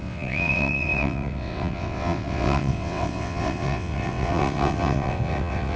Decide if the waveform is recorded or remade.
remade